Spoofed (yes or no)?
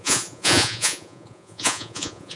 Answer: yes